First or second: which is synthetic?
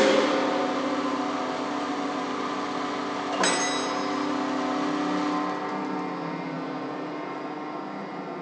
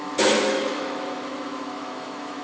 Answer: second